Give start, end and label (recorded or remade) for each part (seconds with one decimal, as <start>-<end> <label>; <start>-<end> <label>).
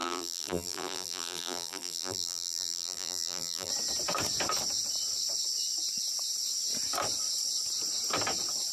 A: 0.0-3.7 remade; 3.7-8.7 recorded